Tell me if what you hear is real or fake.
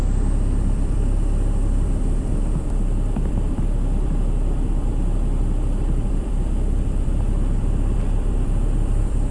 fake